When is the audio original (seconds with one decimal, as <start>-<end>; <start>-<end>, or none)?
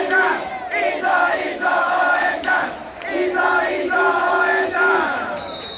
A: 0.5-1.0; 2.8-3.7